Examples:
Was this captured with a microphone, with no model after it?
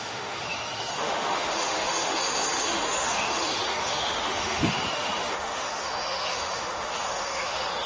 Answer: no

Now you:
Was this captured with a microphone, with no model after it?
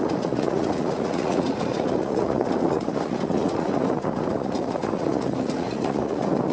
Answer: no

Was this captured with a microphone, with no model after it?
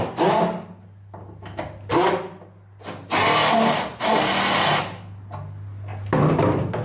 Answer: yes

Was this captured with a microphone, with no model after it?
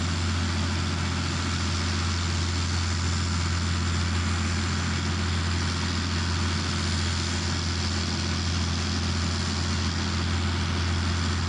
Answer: yes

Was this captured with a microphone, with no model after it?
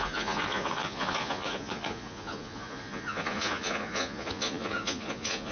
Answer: no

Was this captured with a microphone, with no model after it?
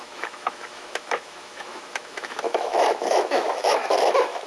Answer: no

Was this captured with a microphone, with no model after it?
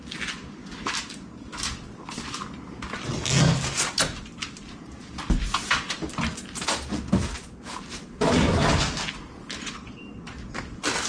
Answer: yes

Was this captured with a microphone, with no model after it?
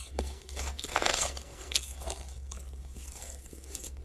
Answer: no